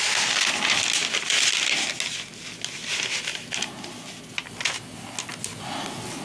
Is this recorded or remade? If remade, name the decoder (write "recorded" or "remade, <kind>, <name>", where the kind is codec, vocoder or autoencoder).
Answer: recorded